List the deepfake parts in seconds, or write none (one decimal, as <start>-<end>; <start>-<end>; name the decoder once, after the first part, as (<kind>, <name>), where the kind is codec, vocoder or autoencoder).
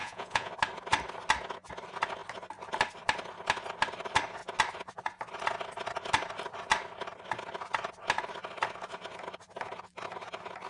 0.0-0.5 (vocoder, Vocos)